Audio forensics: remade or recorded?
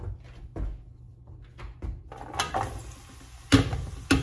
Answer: recorded